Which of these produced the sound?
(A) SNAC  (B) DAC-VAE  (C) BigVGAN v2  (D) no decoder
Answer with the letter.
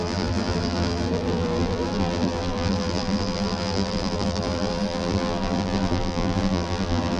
C